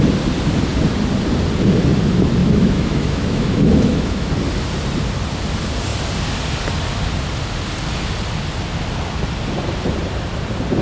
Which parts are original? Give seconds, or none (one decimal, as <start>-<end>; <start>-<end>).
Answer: 0.0-2.4; 4.3-10.8